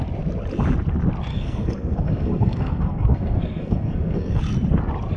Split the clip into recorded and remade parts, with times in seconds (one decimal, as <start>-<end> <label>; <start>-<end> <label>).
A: 0.0-1.3 recorded; 1.3-4.4 remade; 4.4-5.2 recorded

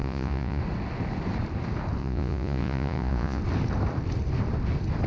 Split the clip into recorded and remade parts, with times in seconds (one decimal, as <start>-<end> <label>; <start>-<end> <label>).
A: 0.0-0.6 remade; 0.6-2.0 recorded; 2.0-3.4 remade; 3.4-5.1 recorded

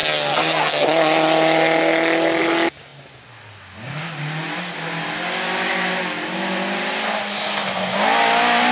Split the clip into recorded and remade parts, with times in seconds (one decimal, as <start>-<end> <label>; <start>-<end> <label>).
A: 0.0-8.7 recorded